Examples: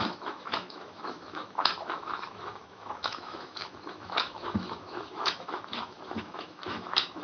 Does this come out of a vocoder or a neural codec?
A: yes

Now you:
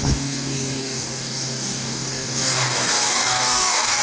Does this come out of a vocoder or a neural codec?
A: yes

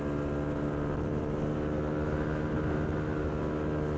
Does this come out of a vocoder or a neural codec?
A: no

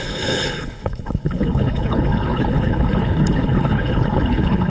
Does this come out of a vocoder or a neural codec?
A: yes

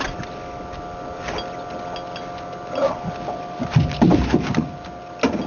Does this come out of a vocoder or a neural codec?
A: no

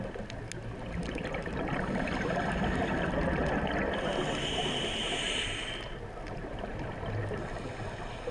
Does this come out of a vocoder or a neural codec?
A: no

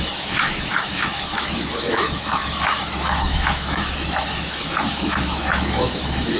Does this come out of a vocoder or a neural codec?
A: yes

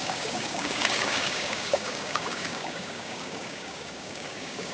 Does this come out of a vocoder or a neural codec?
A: yes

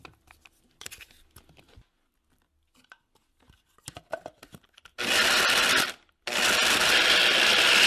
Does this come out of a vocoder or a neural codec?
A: no